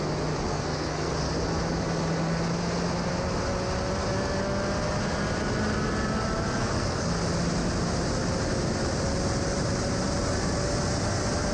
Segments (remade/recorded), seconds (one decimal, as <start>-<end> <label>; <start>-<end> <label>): 0.0-0.5 recorded; 0.5-1.1 remade; 1.1-6.6 recorded; 6.6-7.1 remade; 7.1-11.5 recorded